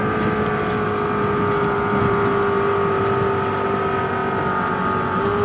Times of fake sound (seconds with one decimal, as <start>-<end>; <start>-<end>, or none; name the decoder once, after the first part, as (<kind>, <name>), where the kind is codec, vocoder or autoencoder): none